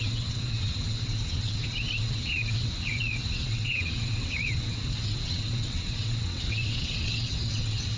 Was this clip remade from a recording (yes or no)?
yes